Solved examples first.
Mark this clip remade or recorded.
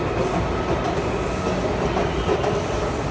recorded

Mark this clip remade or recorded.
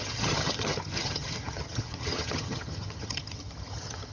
remade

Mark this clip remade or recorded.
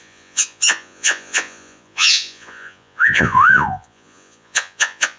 remade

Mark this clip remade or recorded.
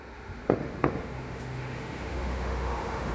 remade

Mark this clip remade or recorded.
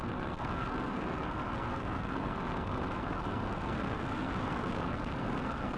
remade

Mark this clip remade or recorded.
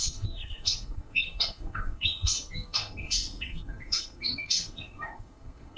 remade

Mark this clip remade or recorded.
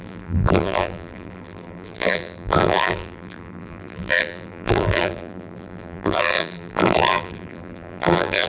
remade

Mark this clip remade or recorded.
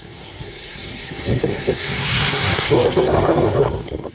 remade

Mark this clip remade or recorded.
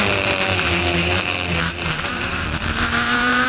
remade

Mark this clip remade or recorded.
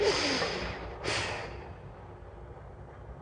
recorded